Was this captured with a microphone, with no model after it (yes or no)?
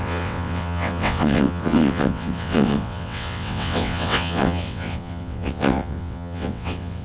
no